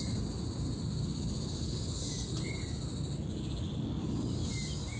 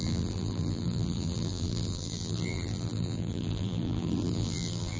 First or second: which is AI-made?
second